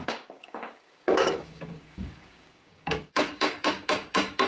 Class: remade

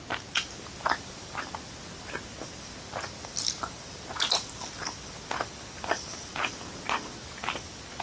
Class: recorded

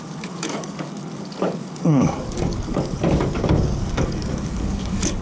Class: remade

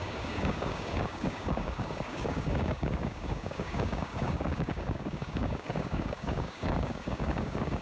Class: remade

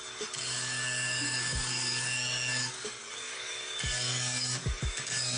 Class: remade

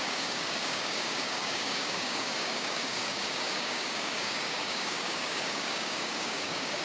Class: remade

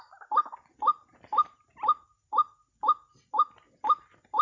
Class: recorded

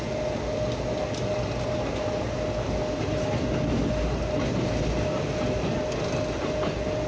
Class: recorded